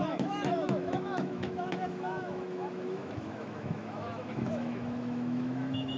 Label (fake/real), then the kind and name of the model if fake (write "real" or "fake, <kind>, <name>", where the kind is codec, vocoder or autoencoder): fake, autoencoder, DAC-VAE